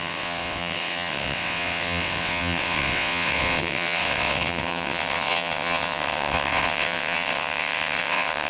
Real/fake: fake